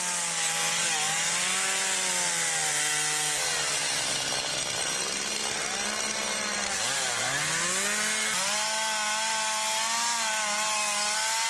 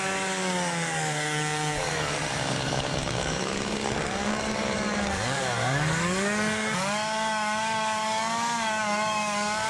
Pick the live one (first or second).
first